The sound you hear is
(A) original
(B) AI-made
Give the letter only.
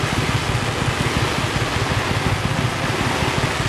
A